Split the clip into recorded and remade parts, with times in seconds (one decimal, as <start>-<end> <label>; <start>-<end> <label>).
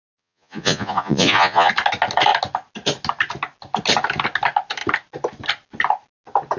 0.0-1.7 remade; 1.7-6.6 recorded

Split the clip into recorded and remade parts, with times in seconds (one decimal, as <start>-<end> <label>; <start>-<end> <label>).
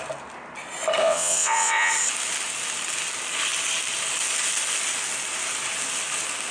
0.0-1.0 recorded; 1.0-1.9 remade; 1.9-6.5 recorded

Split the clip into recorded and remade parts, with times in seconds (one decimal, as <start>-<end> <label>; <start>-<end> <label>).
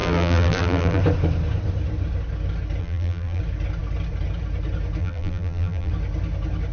0.0-1.0 remade; 1.0-2.8 recorded; 2.8-3.4 remade; 3.4-5.0 recorded; 5.0-5.9 remade; 5.9-6.7 recorded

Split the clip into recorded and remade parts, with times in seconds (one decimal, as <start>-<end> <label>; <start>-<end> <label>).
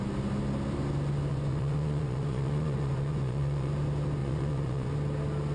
0.0-1.3 recorded; 1.3-3.7 remade; 3.7-4.2 recorded; 4.2-4.9 remade; 4.9-5.5 recorded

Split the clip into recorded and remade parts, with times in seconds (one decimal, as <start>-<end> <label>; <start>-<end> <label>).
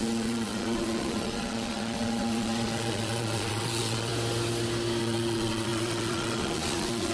0.0-4.1 remade; 4.1-5.0 recorded; 5.0-7.1 remade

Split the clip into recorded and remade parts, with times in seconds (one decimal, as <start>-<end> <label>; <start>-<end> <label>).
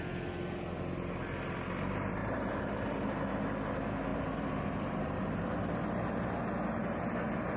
0.0-2.2 recorded; 2.2-2.7 remade; 2.7-4.1 recorded; 4.1-5.8 remade; 5.8-7.6 recorded